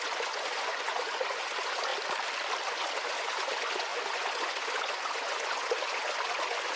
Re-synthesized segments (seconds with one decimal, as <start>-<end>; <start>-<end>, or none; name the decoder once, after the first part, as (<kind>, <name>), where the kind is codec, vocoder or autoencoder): 0.0-1.9 (vocoder, Vocos); 2.7-6.8